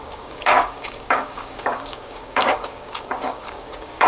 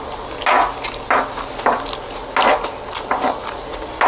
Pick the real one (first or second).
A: second